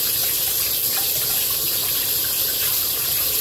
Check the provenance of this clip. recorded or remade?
recorded